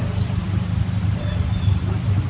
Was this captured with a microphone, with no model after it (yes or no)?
yes